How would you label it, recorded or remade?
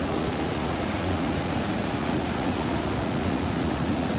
remade